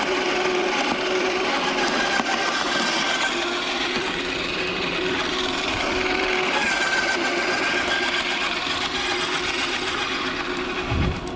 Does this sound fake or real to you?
fake